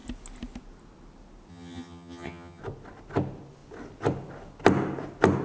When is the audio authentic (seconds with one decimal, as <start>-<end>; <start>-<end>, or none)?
0.0-1.5; 2.6-5.4